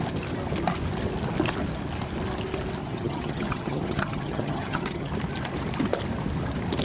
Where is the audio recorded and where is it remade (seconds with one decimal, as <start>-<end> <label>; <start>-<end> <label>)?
0.0-2.8 recorded; 2.8-5.1 remade; 5.1-6.8 recorded